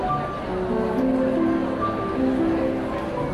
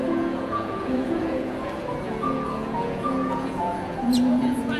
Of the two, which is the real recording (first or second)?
first